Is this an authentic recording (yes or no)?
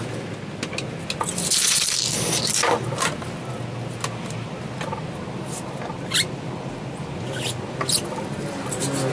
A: yes